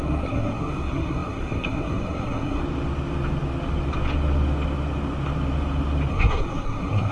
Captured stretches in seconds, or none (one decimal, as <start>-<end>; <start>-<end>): 2.6-6.1